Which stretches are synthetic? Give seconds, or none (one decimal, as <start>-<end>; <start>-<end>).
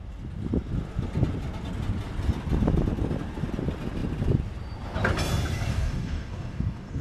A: 5.7-7.0